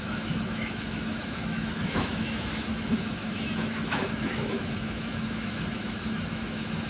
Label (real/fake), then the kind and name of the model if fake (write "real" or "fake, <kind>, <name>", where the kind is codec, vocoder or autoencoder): fake, autoencoder, DAC-VAE